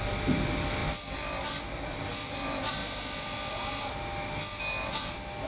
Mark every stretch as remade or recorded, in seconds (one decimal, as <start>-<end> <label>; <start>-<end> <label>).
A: 0.0-5.5 recorded